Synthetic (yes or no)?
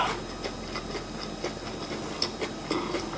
no